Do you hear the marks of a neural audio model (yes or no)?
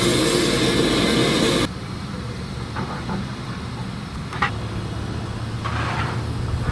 no